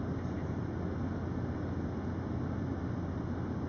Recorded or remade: recorded